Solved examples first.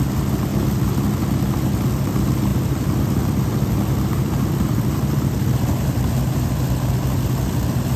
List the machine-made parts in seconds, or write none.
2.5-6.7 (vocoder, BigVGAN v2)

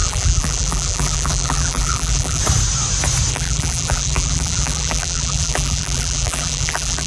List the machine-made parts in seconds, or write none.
0.0-2.4 (vocoder, BigVGAN v2); 3.3-7.1

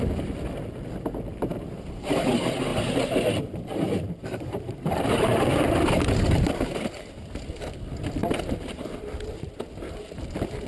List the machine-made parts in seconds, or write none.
2.7-6.8 (vocoder, BigVGAN v2); 8.2-9.5

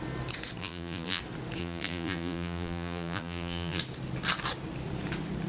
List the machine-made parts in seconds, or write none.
0.6-1.2 (vocoder, BigVGAN v2); 1.6-3.8

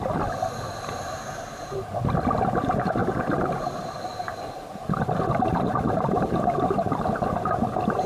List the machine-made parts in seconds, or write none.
3.0-8.1 (vocoder, BigVGAN v2)

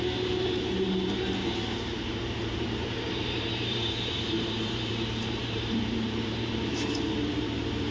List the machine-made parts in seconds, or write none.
0.0-6.7 (vocoder, BigVGAN v2); 7.3-7.9

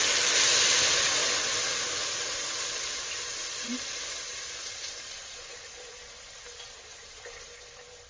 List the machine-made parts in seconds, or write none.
none

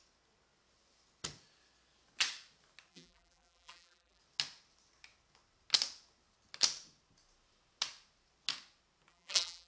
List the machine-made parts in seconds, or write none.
2.9-4.2 (vocoder, BigVGAN v2); 9.1-9.7